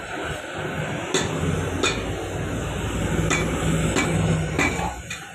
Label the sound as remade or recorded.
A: recorded